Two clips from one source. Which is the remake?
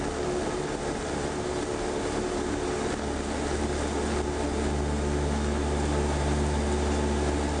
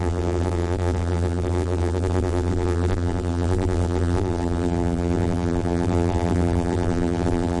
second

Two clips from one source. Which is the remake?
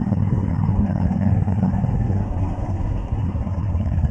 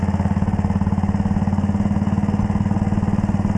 first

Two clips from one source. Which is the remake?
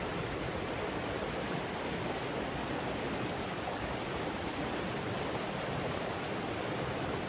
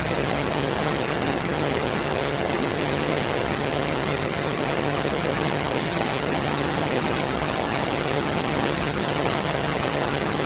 second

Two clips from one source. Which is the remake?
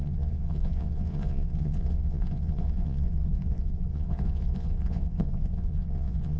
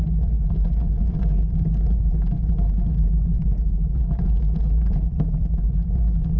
first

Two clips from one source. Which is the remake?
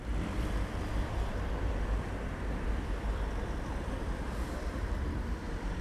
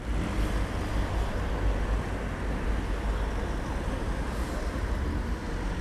first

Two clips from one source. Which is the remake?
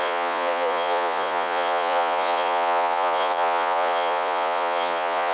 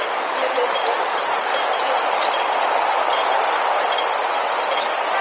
first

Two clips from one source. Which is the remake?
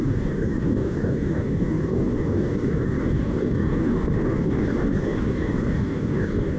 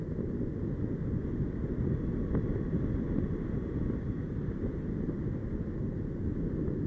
first